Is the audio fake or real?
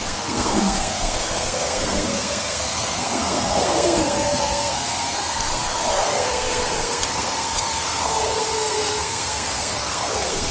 fake